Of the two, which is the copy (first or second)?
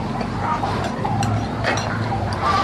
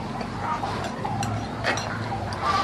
first